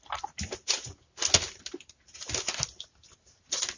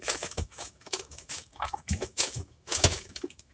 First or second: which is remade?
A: second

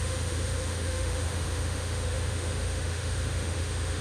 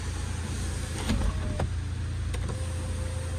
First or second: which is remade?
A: first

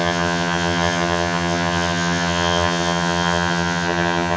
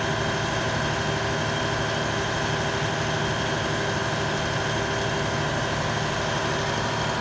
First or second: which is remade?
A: first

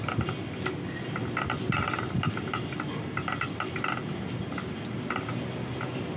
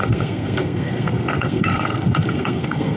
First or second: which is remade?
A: second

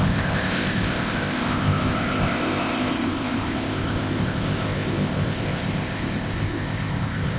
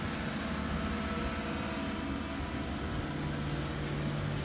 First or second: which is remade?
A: first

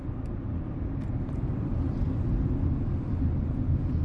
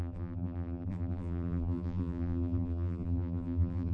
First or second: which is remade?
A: second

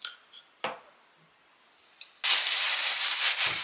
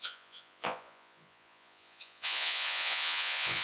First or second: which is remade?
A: second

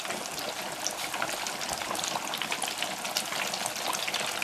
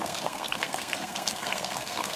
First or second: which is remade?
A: second